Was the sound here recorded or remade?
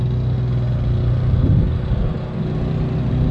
recorded